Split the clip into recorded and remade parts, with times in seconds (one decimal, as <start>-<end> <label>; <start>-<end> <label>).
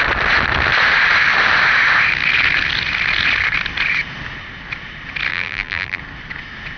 0.0-5.3 recorded; 5.3-6.0 remade; 6.0-6.8 recorded